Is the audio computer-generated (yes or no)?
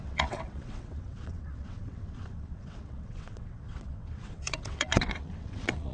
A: yes